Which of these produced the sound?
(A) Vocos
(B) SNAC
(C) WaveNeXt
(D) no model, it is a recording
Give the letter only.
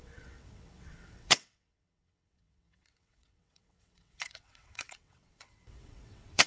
C